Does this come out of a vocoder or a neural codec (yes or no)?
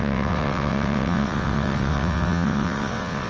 yes